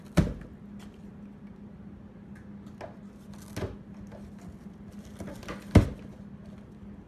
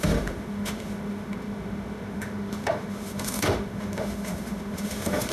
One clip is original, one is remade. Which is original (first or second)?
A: first